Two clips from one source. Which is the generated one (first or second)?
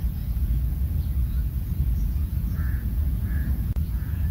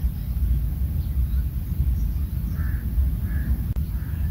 first